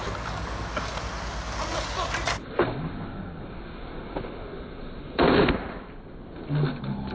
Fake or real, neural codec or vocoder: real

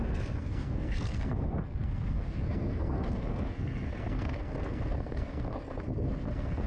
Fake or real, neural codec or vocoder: fake, codec, SNAC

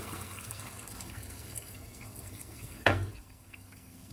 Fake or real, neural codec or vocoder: fake, codec, SNAC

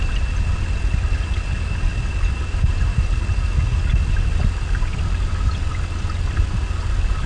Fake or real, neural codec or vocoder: real